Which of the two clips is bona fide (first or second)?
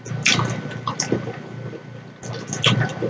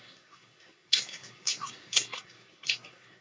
first